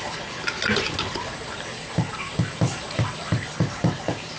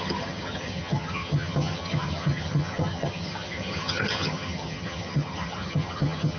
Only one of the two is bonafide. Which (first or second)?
first